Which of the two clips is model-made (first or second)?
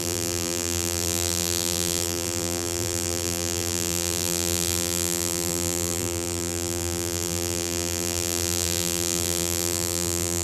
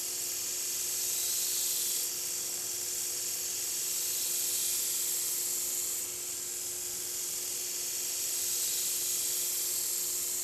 first